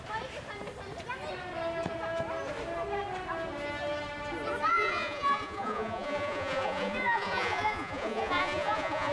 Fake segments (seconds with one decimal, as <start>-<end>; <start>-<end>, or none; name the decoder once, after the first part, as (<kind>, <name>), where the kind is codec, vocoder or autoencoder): 4.7-9.1 (vocoder, Vocos)